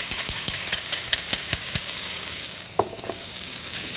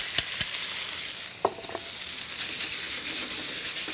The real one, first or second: second